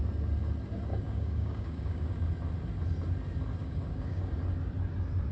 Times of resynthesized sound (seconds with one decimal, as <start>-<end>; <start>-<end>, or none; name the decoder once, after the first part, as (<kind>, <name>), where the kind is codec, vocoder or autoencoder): 0.9-2.2 (codec, DAC); 3.6-4.3